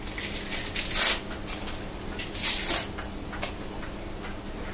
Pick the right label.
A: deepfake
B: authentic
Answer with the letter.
B